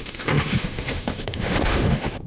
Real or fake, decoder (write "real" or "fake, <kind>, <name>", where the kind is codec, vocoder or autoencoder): fake, autoencoder, DAC-VAE